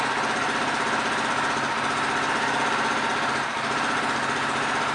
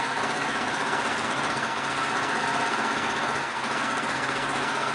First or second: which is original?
first